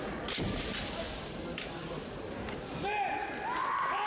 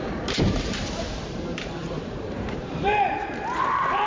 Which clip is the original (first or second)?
first